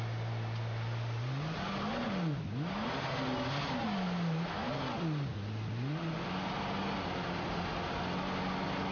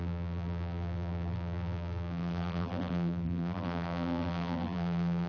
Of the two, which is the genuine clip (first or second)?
first